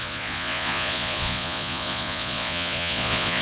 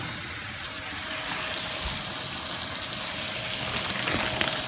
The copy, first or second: first